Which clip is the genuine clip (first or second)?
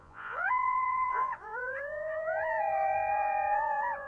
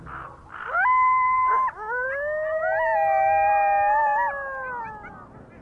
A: second